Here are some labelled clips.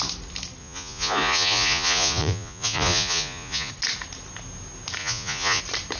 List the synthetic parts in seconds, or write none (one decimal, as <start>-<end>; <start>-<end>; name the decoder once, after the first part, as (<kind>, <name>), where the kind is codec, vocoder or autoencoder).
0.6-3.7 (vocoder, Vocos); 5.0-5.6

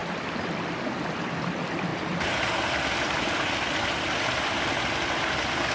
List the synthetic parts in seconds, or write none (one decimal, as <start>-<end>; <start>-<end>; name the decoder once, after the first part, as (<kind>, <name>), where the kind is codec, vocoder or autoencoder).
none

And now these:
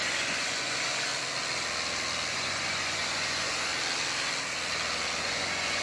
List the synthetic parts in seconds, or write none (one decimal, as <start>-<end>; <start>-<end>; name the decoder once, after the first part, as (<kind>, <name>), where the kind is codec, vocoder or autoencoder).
0.0-1.1 (vocoder, Vocos); 2.3-3.7; 5.2-5.8

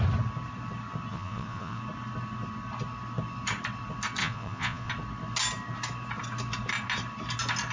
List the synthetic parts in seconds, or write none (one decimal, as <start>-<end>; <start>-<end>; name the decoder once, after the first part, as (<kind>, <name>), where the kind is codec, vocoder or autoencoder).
1.1-1.8 (vocoder, Vocos); 4.2-4.9

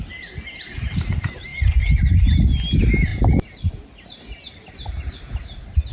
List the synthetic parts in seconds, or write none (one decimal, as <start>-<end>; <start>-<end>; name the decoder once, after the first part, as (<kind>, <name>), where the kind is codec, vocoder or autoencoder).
1.5-2.2 (vocoder, Vocos)

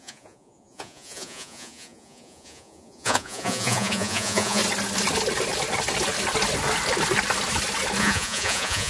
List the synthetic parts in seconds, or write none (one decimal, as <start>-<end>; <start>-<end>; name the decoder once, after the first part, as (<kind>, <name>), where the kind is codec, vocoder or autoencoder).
0.0-4.6 (vocoder, Vocos); 8.0-8.9